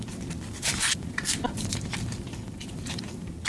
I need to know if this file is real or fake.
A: fake